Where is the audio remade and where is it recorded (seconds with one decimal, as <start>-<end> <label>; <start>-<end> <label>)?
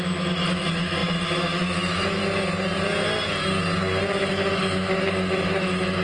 0.0-2.2 remade; 2.2-4.3 recorded; 4.3-6.0 remade